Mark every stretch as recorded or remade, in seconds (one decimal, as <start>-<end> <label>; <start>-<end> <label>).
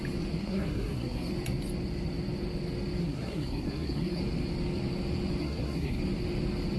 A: 0.0-0.4 recorded; 0.4-1.3 remade; 1.3-3.0 recorded; 3.0-4.2 remade; 4.2-5.4 recorded; 5.4-6.0 remade; 6.0-6.8 recorded